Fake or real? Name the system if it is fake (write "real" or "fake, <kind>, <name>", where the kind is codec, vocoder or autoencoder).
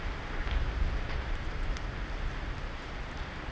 real